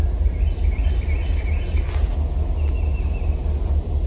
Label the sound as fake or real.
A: real